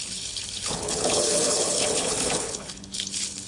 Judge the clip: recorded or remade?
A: remade